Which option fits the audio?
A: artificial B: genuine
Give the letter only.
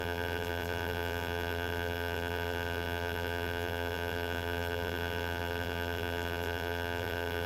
A